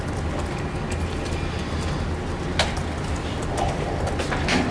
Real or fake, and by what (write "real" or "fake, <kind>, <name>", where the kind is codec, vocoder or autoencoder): real